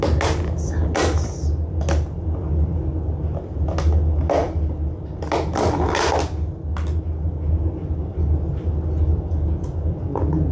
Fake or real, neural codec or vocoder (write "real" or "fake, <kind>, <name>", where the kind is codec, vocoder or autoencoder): real